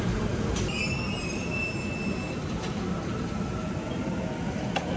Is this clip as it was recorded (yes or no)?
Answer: yes